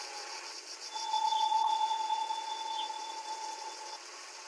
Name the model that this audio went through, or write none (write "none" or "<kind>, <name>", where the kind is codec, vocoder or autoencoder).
vocoder, WaveNeXt